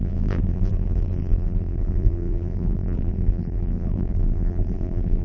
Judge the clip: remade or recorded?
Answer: remade